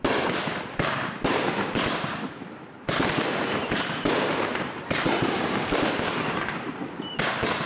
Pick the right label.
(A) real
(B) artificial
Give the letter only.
B